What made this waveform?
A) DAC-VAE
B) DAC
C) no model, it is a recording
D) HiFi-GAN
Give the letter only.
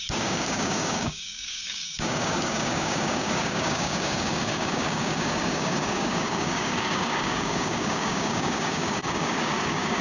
B